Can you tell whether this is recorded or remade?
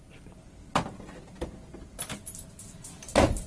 recorded